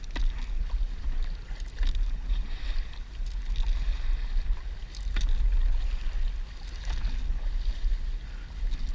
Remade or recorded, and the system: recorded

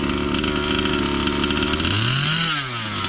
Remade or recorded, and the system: recorded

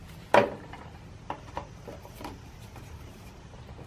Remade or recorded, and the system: recorded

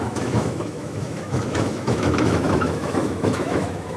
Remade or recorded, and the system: remade, autoencoder, DAC-VAE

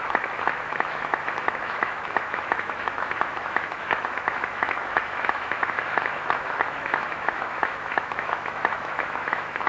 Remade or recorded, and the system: remade, autoencoder, DAC-VAE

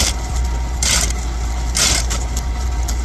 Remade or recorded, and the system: recorded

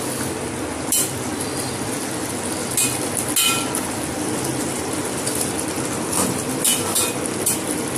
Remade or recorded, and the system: recorded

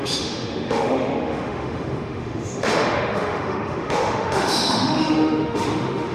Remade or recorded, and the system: remade, autoencoder, DAC-VAE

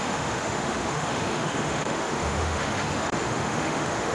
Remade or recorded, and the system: remade, autoencoder, DAC-VAE